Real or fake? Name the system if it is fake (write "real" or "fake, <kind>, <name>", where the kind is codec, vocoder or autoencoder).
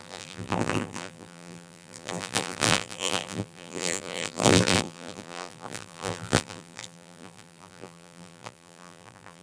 fake, vocoder, BigVGAN v2